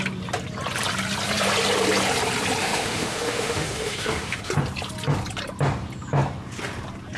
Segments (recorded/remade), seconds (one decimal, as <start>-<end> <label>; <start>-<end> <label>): 0.0-2.6 recorded; 2.6-4.5 remade; 4.5-7.2 recorded